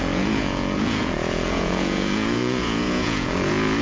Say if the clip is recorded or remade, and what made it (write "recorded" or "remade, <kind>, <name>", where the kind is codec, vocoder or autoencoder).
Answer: remade, vocoder, Vocos